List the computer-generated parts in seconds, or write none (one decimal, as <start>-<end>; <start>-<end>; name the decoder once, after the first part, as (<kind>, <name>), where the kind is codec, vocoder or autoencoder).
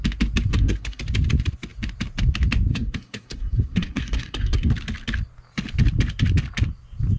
0.5-1.0 (codec, SNAC); 2.7-4.7